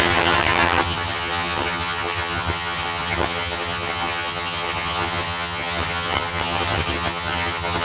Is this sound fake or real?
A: fake